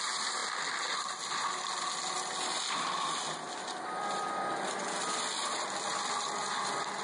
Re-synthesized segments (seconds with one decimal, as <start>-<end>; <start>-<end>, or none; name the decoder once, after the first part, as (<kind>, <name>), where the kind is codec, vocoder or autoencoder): none